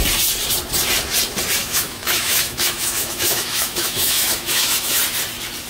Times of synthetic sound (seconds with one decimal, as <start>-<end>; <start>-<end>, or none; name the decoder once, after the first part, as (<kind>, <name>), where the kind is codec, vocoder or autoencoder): 1.6-5.0 (autoencoder, DAC-VAE)